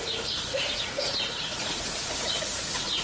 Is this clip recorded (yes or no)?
no